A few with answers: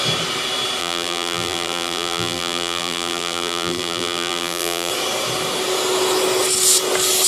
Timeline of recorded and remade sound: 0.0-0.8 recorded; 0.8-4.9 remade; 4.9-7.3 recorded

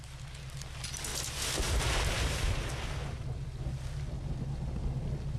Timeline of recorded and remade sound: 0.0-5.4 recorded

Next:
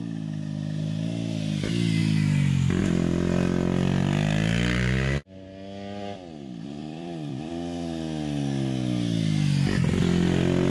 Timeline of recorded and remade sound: 0.0-2.0 recorded; 2.0-2.8 remade; 2.8-6.8 recorded; 6.8-7.5 remade; 7.5-10.7 recorded